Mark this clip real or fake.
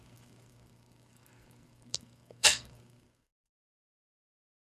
fake